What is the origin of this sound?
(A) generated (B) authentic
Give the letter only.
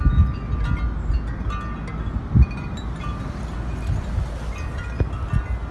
B